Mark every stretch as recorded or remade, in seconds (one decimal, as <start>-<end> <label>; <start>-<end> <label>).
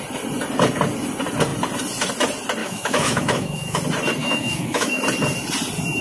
0.0-2.6 recorded; 2.6-3.8 remade; 3.8-4.2 recorded; 4.2-5.0 remade; 5.0-6.0 recorded